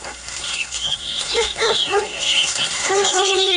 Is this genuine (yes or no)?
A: no